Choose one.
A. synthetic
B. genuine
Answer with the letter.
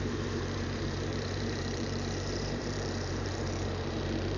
A